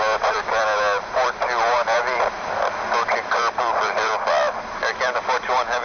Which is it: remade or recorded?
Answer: remade